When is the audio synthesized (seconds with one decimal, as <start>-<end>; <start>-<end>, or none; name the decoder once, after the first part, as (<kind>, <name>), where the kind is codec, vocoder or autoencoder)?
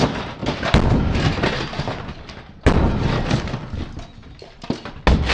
none